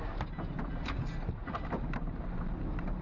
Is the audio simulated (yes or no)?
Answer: no